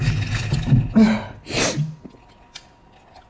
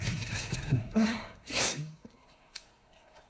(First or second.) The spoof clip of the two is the second